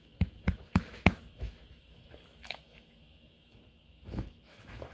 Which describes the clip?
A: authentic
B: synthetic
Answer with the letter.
B